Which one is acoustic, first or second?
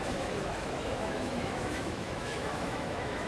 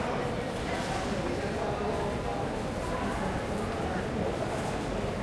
second